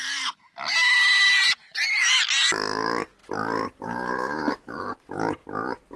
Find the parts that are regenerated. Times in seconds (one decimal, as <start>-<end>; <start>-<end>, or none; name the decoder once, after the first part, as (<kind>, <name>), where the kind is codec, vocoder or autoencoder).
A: none